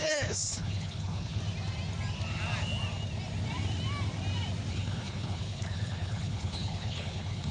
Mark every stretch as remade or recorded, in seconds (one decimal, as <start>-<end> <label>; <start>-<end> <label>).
0.0-1.4 remade; 1.4-4.7 recorded; 4.7-7.5 remade